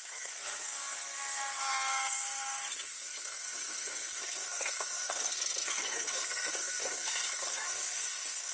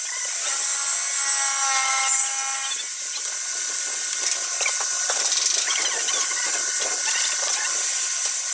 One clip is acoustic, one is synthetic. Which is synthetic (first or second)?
first